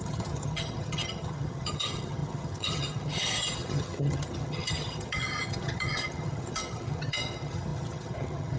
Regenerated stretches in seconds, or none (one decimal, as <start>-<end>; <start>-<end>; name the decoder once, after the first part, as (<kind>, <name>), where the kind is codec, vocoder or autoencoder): 0.0-8.6 (vocoder, HiFi-GAN)